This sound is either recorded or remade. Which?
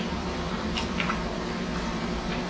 remade